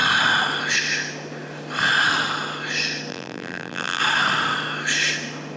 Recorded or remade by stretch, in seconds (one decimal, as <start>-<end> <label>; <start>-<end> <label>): 0.0-3.1 recorded; 3.1-4.0 remade; 4.0-5.6 recorded